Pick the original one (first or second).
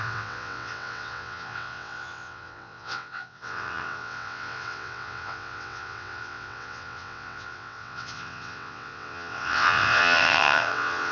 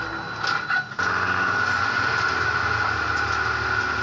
second